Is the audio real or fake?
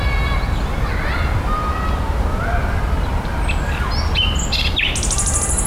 real